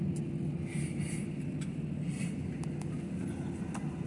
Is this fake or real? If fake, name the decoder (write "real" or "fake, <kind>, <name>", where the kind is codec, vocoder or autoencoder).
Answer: real